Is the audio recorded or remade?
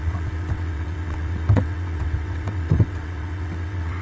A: remade